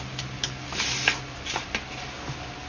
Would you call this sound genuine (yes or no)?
yes